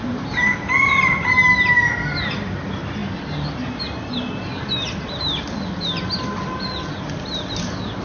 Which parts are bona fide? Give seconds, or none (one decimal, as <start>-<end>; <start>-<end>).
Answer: 0.0-8.0